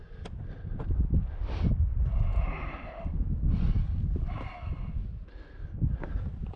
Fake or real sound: real